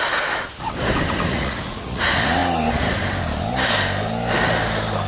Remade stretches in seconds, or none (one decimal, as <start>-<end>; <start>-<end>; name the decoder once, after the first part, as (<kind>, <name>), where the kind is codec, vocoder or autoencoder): 1.3-2.0 (vocoder, Vocos)